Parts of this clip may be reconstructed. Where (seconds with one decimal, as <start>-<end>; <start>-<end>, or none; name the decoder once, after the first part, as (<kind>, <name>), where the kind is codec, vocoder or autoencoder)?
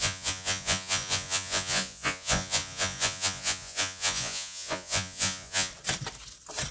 0.0-5.7 (vocoder, Vocos)